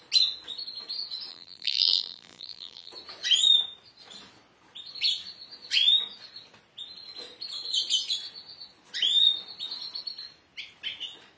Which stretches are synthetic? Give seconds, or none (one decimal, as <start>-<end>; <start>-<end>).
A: 1.3-2.9